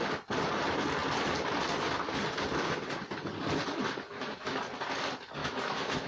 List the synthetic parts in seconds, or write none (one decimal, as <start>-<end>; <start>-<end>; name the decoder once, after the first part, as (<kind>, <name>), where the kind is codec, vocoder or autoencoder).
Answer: 4.1-4.6 (autoencoder, DAC-VAE); 5.4-6.1